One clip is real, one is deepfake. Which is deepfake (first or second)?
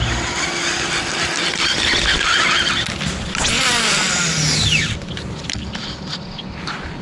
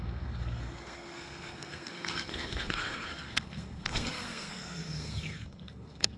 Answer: second